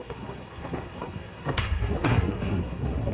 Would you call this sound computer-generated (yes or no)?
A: yes